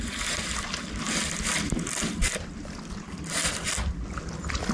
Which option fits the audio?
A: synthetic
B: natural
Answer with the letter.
B